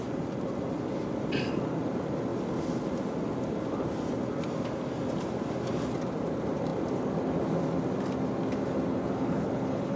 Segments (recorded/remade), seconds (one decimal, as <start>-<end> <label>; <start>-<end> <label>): 0.0-8.9 recorded; 8.9-10.0 remade